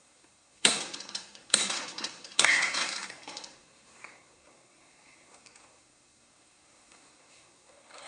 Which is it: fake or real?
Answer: fake